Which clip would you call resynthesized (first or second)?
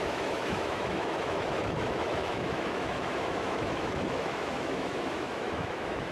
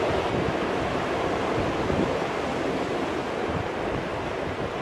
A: first